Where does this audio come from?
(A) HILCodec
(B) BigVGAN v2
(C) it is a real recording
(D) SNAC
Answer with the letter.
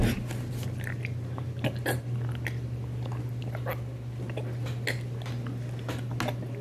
C